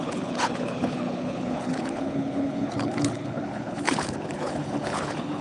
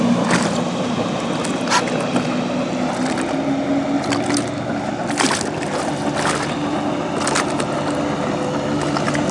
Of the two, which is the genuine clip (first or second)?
second